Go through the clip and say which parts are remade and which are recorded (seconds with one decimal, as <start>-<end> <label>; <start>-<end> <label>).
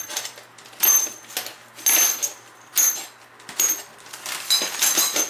0.0-5.3 recorded